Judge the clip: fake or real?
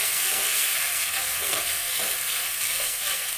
fake